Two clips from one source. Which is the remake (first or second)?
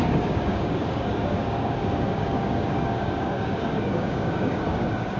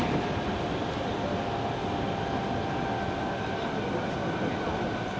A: first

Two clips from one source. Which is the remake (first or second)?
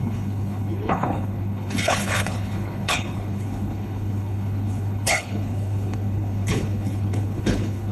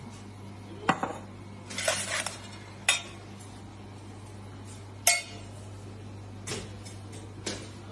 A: first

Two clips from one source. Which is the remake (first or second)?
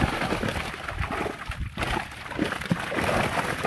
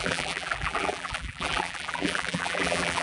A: second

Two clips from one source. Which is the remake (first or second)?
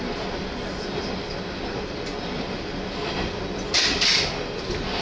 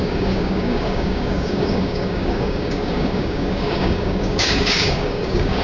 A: second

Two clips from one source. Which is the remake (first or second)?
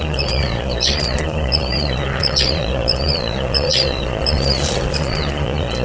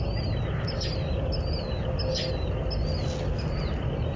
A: first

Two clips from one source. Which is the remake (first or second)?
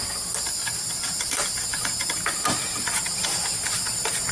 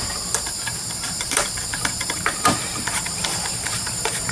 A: second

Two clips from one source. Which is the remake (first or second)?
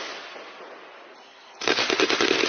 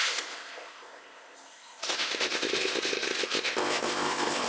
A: second